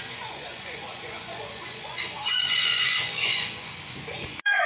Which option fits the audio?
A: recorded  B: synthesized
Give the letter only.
B